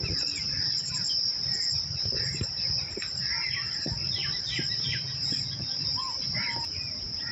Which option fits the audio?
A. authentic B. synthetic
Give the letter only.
B